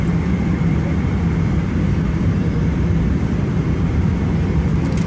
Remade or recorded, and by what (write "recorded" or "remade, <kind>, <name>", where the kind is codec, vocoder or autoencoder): recorded